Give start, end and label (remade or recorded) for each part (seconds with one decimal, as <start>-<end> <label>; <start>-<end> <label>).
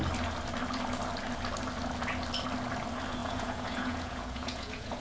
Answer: 0.0-3.2 recorded; 3.2-5.0 remade